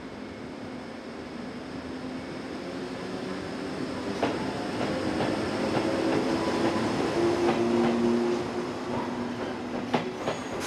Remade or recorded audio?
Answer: recorded